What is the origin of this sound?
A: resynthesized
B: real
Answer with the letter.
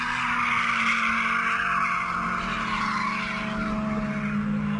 B